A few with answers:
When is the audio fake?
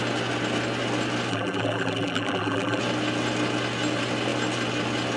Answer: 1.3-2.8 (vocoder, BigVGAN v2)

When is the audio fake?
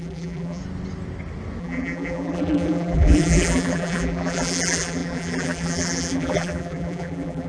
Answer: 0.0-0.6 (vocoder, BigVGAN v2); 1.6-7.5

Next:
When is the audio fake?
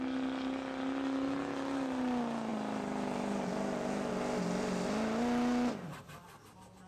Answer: none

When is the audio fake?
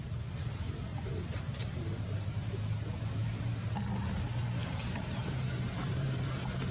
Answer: 0.9-2.5 (vocoder, BigVGAN v2); 3.2-3.7; 4.6-6.7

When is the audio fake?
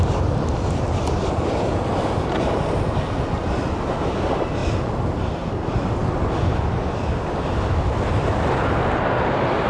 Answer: none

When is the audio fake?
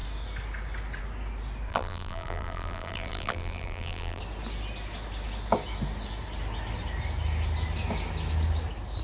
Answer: 1.7-4.2 (vocoder, BigVGAN v2)